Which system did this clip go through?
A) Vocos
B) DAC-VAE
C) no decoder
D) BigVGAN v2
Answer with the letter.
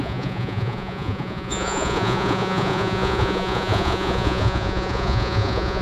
A